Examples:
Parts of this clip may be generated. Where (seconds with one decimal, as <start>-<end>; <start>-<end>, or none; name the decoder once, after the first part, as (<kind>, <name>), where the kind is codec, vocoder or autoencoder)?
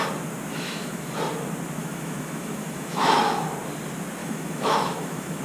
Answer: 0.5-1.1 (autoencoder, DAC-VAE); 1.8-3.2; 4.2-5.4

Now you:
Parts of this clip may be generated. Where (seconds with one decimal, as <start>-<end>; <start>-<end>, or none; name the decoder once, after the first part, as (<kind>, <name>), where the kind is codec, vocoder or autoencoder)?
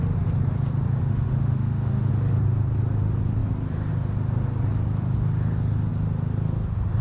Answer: 1.0-2.1 (autoencoder, DAC-VAE)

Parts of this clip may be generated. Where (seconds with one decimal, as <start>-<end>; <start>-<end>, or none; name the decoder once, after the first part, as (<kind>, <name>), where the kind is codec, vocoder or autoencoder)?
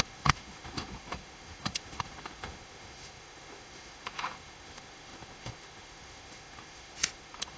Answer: 0.0-7.6 (autoencoder, DAC-VAE)